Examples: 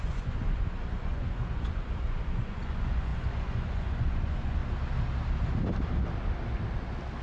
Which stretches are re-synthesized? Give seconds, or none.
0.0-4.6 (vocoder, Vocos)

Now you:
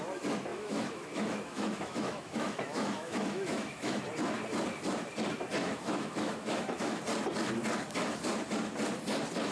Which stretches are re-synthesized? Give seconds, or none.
0.5-4.1 (autoencoder, DAC-VAE); 5.6-7.0